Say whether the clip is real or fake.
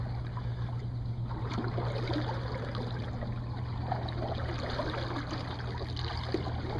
real